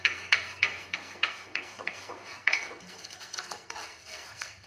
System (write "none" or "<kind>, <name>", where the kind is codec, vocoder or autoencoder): codec, SNAC